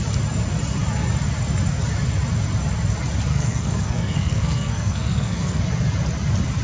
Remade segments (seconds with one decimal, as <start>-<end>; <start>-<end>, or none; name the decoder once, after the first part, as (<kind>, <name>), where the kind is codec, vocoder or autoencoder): 3.3-5.6 (codec, SNAC)